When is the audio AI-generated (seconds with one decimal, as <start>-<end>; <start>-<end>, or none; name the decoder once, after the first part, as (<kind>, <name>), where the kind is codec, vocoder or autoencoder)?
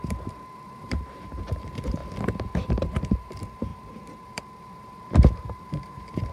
0.0-2.0 (vocoder, BigVGAN v2); 2.7-6.3